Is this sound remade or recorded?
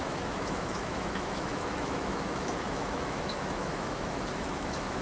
remade